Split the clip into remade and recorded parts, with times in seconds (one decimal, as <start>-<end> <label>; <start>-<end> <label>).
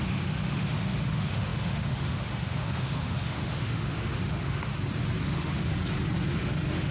0.0-4.7 remade; 4.7-5.2 recorded; 5.2-5.7 remade; 5.7-6.3 recorded; 6.3-6.9 remade